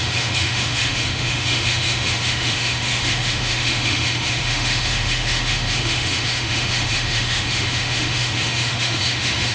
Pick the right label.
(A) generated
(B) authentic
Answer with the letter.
A